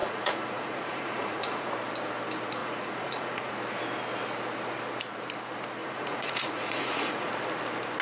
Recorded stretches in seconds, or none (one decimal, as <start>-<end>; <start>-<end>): 1.7-2.6; 3.5-5.8; 7.3-8.0